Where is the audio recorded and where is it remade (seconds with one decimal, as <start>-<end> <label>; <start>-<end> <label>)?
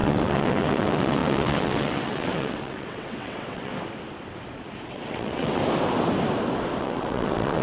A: 0.0-3.7 remade; 3.7-4.9 recorded; 4.9-5.6 remade; 5.6-6.8 recorded; 6.8-7.6 remade